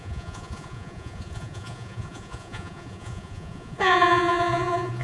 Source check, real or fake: fake